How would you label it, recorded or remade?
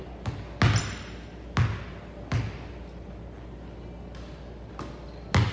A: recorded